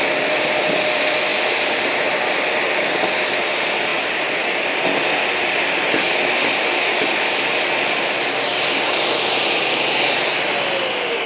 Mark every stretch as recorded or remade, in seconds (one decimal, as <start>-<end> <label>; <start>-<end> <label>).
0.0-11.3 recorded